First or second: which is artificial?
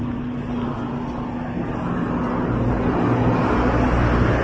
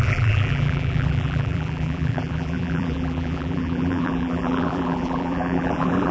second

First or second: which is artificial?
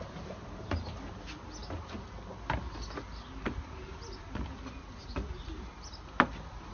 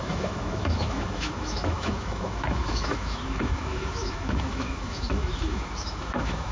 second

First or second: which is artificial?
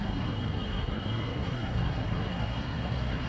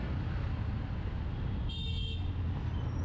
first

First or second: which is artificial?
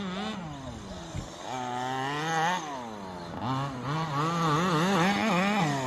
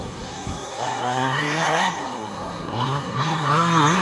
second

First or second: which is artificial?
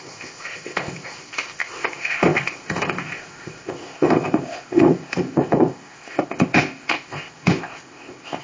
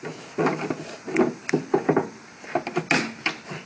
first